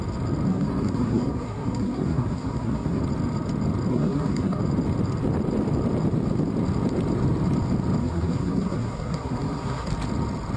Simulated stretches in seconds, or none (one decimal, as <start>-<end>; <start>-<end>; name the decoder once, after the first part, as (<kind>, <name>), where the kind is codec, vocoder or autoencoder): 0.5-3.0 (codec, SNAC); 3.9-4.6; 8.0-9.9